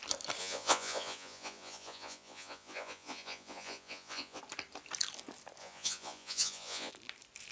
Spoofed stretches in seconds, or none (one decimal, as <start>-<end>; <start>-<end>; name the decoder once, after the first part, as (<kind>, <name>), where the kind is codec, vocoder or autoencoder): 0.4-4.4 (vocoder, Vocos); 5.6-6.9